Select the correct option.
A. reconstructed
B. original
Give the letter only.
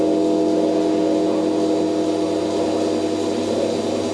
B